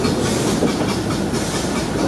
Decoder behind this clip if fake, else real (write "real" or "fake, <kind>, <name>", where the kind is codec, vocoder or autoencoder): real